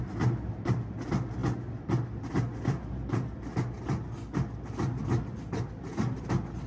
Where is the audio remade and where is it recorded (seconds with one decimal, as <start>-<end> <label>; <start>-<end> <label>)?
0.0-6.7 recorded